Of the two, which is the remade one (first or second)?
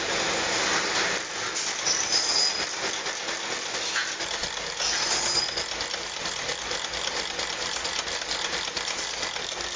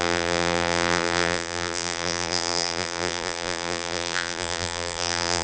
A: second